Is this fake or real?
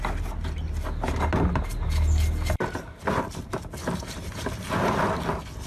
real